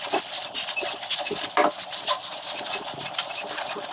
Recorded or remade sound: recorded